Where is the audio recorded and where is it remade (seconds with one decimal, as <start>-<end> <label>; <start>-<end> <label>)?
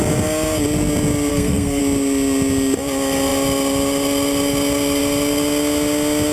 0.0-1.3 recorded; 1.3-1.8 remade; 1.8-6.3 recorded